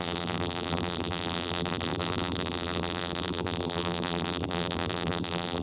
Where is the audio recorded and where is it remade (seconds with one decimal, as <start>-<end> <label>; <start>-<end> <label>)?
0.0-5.6 remade